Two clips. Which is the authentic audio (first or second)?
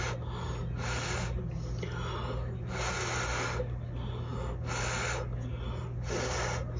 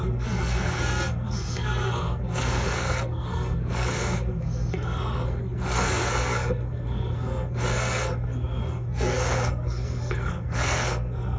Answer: first